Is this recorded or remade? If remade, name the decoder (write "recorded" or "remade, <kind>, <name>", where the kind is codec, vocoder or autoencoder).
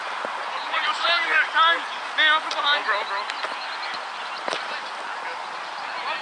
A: recorded